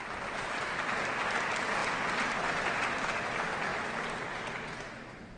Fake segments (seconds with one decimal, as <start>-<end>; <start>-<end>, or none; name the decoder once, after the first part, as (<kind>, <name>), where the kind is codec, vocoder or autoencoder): none